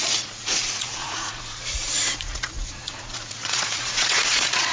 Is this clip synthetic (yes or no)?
yes